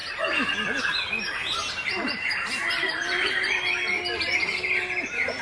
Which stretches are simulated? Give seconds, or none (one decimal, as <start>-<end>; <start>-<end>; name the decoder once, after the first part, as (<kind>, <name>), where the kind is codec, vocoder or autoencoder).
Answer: 1.4-4.6 (vocoder, BigVGAN v2)